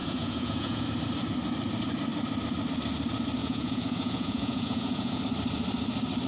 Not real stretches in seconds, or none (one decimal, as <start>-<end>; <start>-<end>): 0.0-0.8; 3.4-5.2